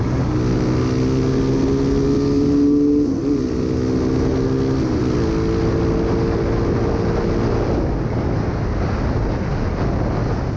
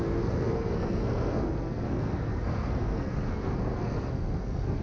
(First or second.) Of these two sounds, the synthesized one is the second